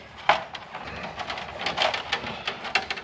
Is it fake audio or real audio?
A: real